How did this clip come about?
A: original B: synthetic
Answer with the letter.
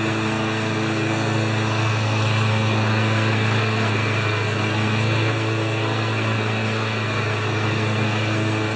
B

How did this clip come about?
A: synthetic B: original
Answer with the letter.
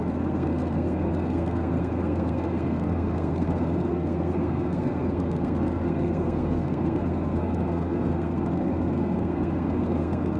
A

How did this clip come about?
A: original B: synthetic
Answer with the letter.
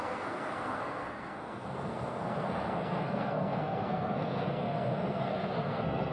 B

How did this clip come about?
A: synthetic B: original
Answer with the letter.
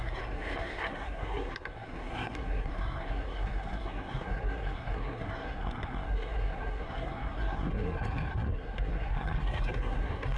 A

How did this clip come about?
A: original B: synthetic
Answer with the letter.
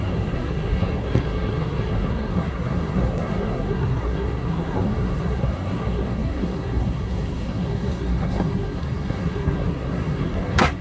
B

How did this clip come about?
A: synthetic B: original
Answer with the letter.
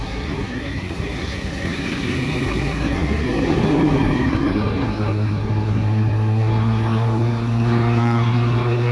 A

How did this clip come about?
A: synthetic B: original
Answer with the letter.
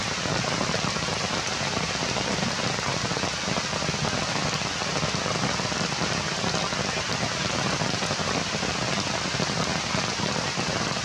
B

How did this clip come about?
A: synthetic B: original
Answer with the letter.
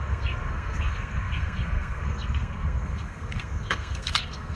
A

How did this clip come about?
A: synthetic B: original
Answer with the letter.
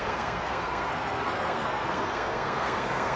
A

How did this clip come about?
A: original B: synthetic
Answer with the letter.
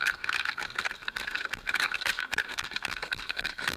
B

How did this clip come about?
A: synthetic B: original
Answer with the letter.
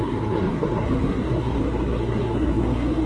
A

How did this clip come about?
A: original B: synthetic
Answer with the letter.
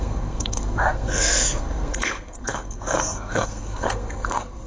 B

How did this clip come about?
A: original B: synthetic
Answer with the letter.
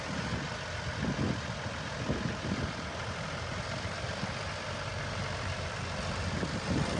A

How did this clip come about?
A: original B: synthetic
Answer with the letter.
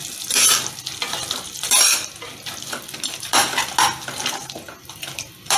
A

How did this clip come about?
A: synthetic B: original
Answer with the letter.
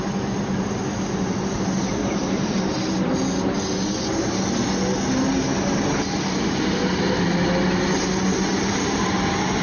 B